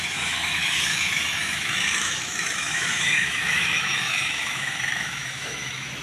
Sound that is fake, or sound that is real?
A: fake